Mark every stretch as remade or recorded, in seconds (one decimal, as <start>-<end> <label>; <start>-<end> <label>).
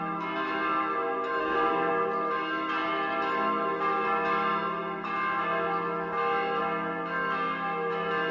0.0-1.4 recorded; 1.4-1.9 remade; 1.9-8.3 recorded